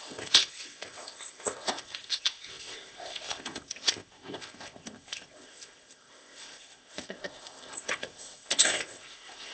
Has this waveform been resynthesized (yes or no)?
yes